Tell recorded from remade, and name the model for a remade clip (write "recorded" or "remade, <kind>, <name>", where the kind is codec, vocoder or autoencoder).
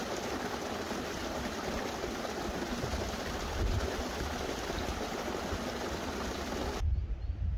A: recorded